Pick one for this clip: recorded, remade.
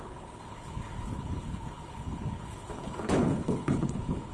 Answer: remade